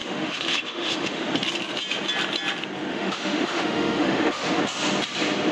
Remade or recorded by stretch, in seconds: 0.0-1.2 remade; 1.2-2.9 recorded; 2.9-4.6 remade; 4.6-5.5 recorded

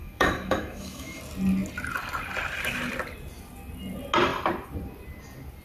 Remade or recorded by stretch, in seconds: 0.0-1.2 remade; 1.2-5.6 recorded

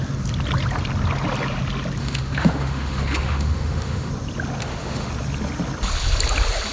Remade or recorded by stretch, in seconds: 0.0-2.0 recorded; 2.0-4.1 remade; 4.1-4.6 recorded; 4.6-5.1 remade; 5.1-6.7 recorded